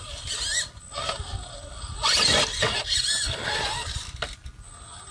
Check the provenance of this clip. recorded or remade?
recorded